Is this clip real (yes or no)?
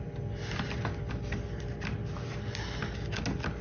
yes